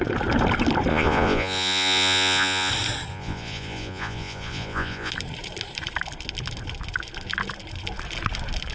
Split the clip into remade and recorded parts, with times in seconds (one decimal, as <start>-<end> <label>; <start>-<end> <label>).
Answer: 0.0-0.9 recorded; 0.9-2.7 remade; 2.7-3.1 recorded; 3.1-5.1 remade; 5.1-8.7 recorded